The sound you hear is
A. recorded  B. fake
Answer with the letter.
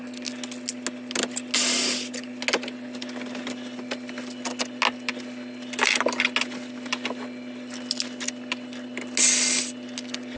A